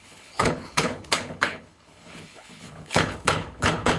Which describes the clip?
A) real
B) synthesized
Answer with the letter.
B